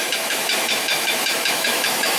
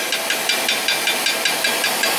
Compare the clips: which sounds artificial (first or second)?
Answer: first